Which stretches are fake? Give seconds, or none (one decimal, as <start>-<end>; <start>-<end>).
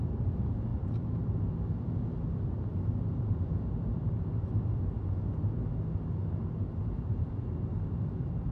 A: 0.0-0.7; 2.7-4.5; 6.5-8.5